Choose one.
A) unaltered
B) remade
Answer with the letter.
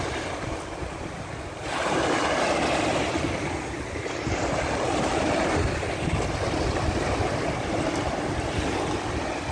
A